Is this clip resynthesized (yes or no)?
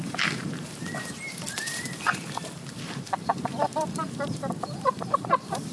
yes